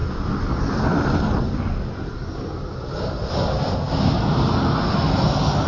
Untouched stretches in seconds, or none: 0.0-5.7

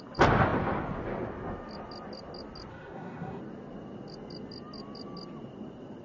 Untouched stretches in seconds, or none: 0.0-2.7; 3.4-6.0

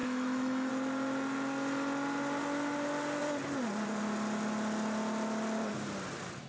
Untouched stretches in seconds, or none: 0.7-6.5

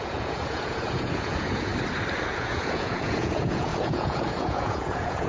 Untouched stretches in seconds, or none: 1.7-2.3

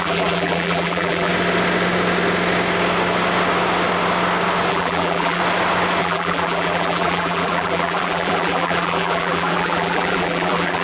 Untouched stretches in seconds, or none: 1.3-4.7; 5.4-6.0

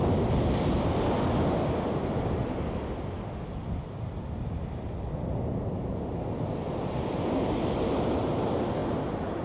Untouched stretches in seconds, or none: 0.0-8.8

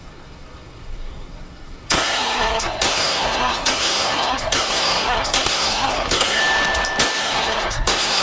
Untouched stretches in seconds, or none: 6.4-7.2

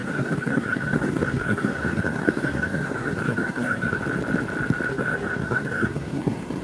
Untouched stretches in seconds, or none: 4.0-4.9